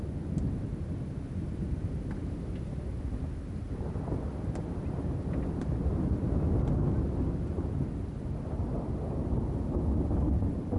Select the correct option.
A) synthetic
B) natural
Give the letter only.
B